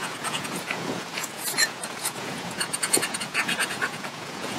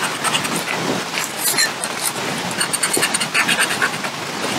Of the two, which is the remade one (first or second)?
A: first